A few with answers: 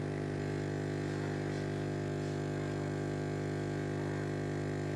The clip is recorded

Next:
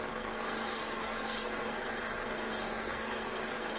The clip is remade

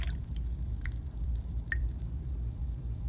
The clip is remade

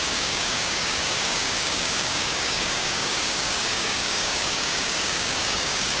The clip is remade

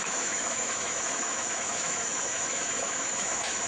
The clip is remade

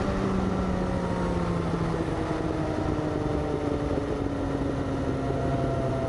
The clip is recorded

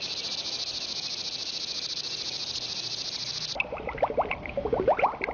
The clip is recorded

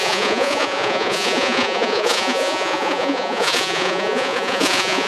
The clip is remade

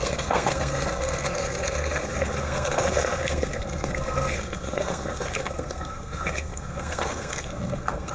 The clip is remade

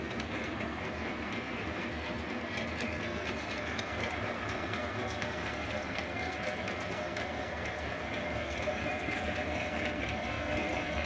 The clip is remade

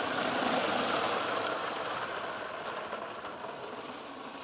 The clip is recorded